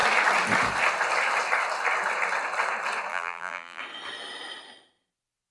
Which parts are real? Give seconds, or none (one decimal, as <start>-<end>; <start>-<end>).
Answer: 0.0-3.1; 3.8-5.5